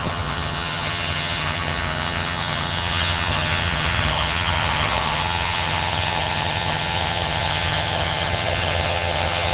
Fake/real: fake